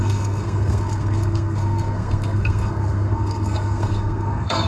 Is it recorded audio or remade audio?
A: remade